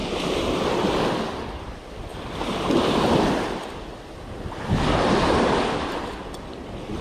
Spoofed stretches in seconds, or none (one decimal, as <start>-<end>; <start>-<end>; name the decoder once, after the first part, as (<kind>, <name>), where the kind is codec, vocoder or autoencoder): none